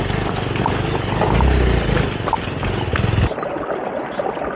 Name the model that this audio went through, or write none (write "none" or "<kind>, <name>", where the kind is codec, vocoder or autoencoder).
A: none